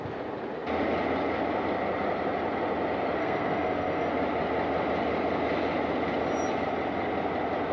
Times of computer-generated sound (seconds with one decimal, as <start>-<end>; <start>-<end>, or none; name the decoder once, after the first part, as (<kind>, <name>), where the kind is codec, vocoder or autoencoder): 3.2-4.1 (codec, SNAC)